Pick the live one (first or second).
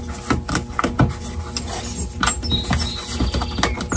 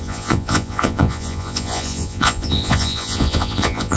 first